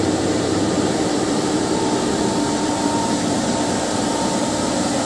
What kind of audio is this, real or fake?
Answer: fake